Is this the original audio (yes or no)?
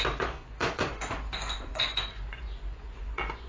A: no